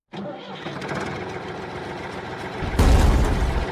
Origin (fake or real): real